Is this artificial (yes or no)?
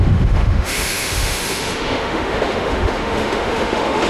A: yes